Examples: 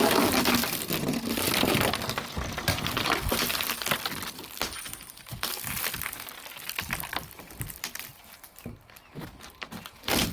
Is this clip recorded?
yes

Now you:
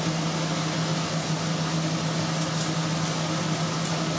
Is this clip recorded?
yes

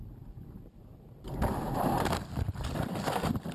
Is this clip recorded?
no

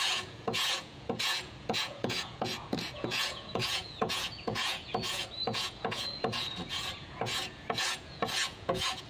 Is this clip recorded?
no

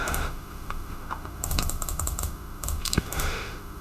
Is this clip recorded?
no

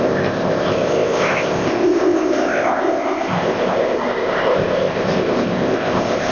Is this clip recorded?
no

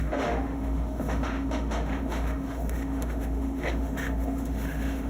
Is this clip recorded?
no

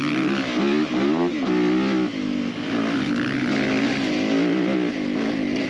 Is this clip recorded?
yes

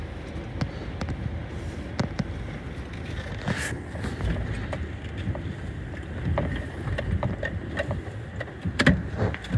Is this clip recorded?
yes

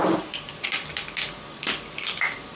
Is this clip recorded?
yes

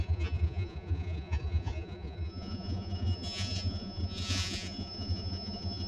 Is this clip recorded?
no